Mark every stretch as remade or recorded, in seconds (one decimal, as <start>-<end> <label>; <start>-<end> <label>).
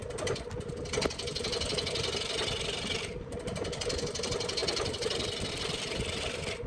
0.0-6.7 recorded